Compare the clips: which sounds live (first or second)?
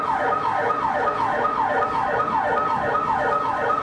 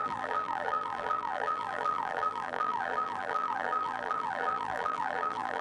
first